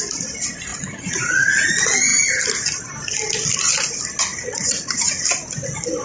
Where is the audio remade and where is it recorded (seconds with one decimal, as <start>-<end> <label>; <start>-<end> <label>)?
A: 0.0-0.7 recorded; 0.7-1.7 remade; 1.7-4.3 recorded; 4.3-5.2 remade; 5.2-6.0 recorded